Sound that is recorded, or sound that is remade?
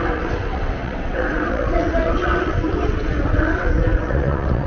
remade